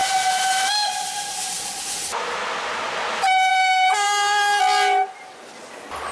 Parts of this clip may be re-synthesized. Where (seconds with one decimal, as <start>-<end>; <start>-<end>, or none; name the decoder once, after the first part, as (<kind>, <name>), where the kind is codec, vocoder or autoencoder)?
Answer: 0.0-2.2 (vocoder, BigVGAN v2); 3.5-4.6